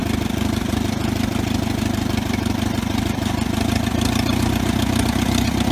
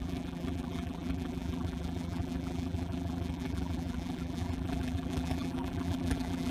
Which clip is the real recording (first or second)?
first